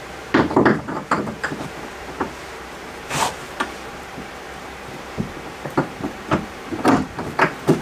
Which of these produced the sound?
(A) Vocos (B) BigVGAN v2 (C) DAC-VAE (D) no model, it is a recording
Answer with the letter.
B